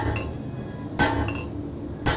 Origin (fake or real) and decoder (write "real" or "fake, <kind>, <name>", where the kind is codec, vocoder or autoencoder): real